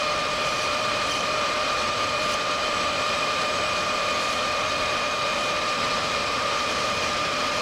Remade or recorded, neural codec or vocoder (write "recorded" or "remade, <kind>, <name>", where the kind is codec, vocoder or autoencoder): remade, vocoder, BigVGAN v2